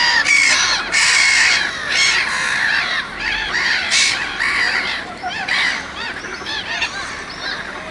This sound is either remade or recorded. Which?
remade